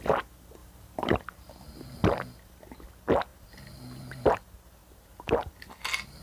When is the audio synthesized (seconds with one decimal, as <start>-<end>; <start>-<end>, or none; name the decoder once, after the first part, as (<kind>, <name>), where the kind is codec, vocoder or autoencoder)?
0.6-1.5 (vocoder, BigVGAN v2); 4.8-5.5